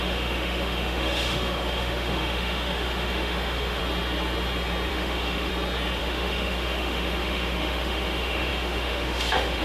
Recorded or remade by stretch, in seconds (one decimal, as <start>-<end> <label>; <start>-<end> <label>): 0.0-3.8 remade; 3.8-4.9 recorded; 4.9-5.5 remade; 5.5-6.0 recorded; 6.0-9.6 remade